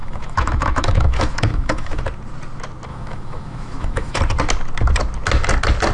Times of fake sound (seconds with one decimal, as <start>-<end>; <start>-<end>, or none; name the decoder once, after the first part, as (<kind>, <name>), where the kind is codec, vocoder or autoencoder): 0.0-2.0 (autoencoder, DAC-VAE); 2.9-4.2